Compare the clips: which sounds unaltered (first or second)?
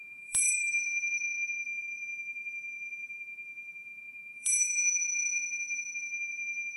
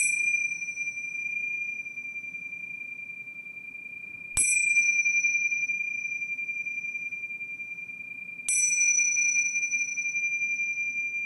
second